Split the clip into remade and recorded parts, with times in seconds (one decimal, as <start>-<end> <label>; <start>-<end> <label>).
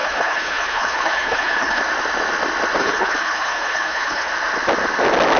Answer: 0.0-1.8 remade; 1.8-2.8 recorded; 2.8-4.3 remade; 4.3-5.4 recorded